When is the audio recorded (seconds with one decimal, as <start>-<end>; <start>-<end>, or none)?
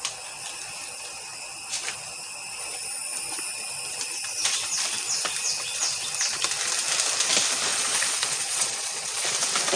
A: 0.0-7.7; 9.2-9.8